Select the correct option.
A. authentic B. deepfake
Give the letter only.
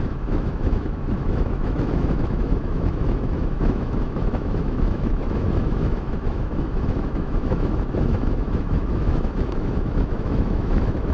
B